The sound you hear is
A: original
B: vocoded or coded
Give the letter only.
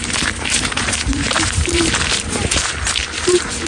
B